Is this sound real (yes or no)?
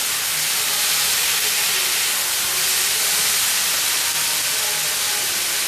yes